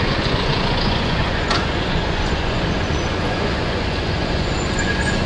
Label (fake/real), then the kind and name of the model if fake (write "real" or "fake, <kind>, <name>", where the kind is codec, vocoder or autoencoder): fake, vocoder, Vocos